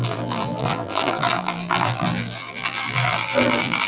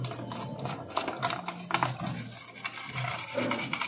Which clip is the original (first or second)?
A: second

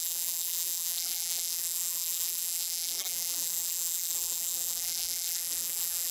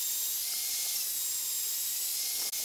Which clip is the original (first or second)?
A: second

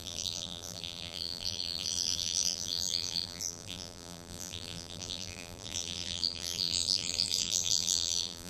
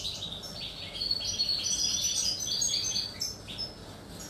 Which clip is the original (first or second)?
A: second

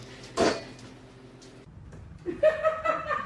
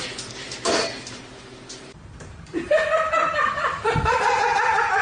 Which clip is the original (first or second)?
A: first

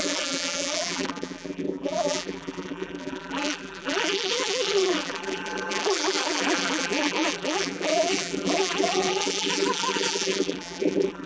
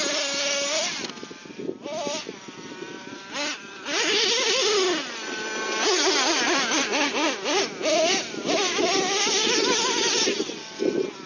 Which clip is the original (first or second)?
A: second